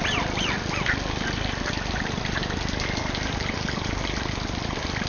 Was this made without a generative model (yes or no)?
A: yes